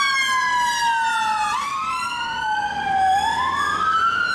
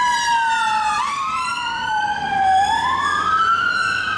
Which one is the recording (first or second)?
first